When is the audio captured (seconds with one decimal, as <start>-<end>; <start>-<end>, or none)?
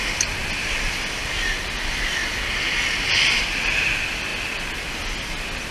0.0-5.7